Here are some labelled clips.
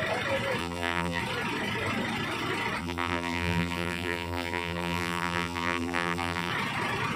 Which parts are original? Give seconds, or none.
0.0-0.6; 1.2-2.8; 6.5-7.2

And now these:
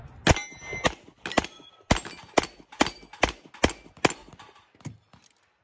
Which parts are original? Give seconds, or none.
0.0-5.6

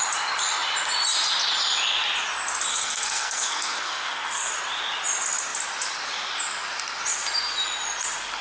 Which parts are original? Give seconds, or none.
0.0-2.7; 4.5-8.4